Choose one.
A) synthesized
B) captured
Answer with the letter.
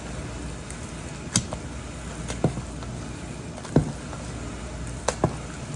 B